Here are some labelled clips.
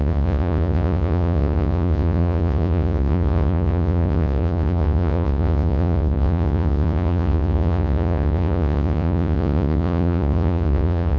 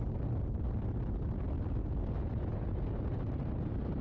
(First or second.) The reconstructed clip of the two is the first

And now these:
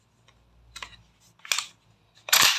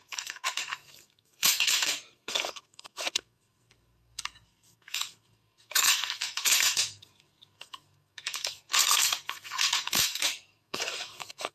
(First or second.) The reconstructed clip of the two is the second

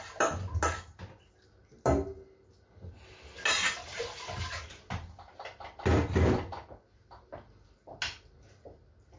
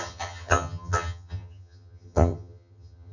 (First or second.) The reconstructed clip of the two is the second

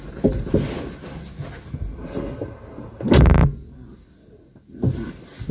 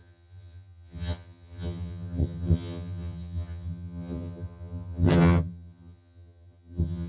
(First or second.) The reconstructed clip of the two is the second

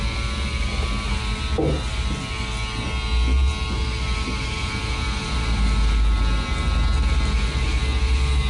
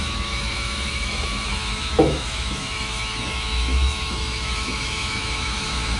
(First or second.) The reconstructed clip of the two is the second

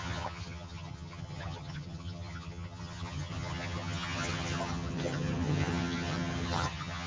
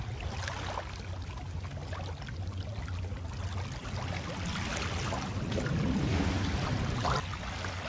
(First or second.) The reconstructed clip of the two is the first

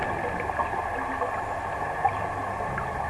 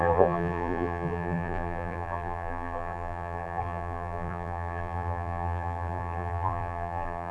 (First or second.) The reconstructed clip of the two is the second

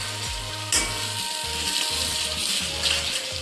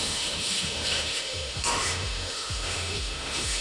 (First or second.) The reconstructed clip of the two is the second